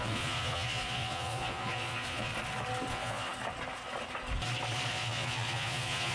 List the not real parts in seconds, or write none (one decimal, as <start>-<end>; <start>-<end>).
0.0-2.3; 2.9-3.3; 4.9-6.1